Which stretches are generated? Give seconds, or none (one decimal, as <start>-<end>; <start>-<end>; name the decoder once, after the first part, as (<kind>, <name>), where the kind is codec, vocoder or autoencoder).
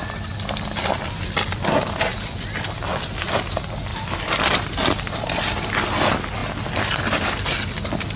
3.9-5.8 (vocoder, BigVGAN v2)